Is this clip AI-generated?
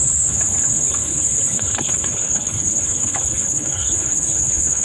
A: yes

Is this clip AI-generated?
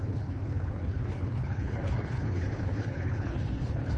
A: yes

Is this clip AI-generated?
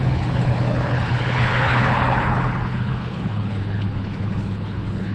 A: yes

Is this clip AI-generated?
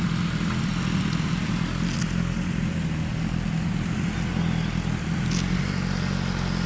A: no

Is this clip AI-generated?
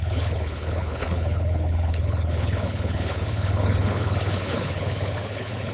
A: yes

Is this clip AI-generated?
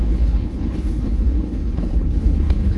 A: yes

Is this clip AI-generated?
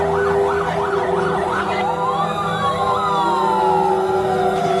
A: no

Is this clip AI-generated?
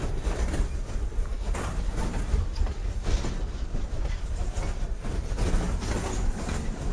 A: no